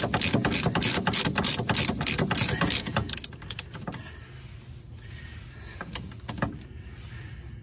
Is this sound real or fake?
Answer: real